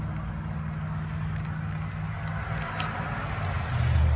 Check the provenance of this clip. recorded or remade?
recorded